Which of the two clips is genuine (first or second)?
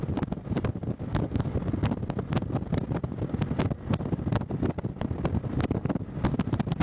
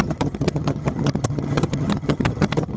first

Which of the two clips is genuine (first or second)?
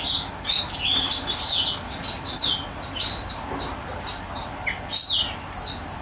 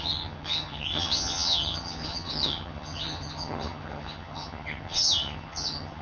first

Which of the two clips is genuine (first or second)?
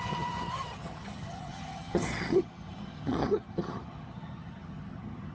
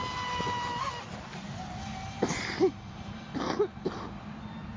second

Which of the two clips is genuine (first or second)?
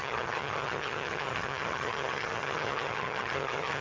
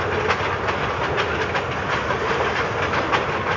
second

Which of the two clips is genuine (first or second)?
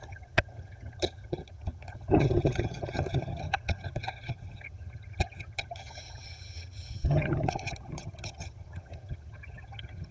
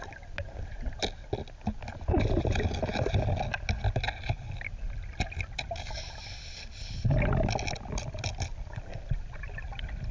second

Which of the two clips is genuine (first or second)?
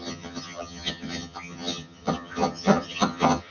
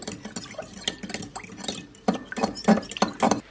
second